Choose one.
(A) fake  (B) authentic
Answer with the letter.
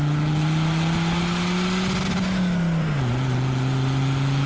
B